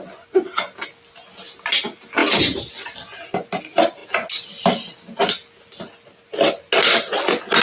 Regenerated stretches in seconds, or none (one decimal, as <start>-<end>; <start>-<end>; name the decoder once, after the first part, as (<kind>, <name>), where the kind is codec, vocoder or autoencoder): none